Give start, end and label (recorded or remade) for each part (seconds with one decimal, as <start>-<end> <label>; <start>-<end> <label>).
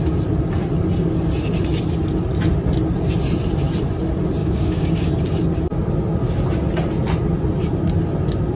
0.0-4.4 recorded; 4.4-5.1 remade; 5.1-8.5 recorded